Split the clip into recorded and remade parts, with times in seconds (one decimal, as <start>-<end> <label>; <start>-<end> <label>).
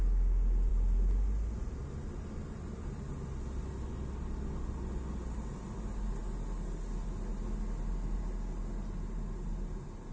0.0-10.1 recorded